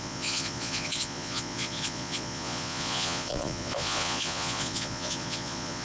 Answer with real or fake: fake